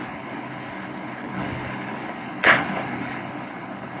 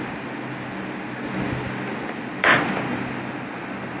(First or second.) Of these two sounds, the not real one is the first